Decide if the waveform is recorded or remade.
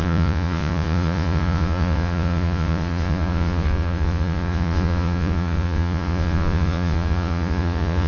remade